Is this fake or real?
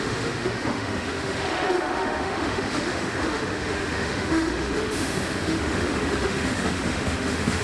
fake